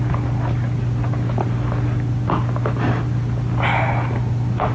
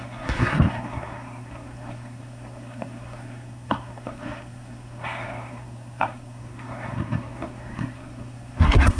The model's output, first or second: second